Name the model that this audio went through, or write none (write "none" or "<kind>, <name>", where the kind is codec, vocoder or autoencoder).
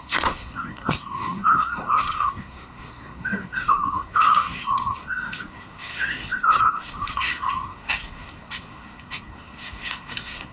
codec, SNAC